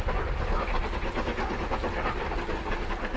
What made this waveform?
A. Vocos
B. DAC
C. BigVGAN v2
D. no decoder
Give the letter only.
D